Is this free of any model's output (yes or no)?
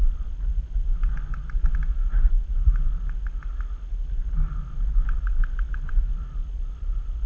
yes